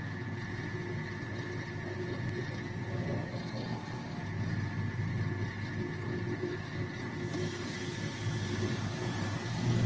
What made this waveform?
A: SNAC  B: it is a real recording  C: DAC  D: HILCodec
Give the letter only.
B